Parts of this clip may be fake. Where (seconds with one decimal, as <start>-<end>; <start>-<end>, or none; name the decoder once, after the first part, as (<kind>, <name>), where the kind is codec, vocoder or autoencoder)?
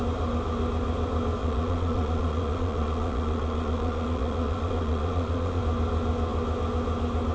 1.4-5.6 (vocoder, Vocos)